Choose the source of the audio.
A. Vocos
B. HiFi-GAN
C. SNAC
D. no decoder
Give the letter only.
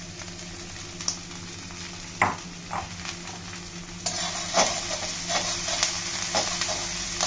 D